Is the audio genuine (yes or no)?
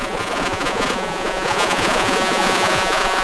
no